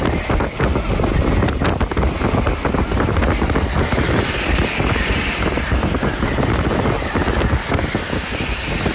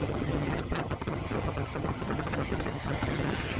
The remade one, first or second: second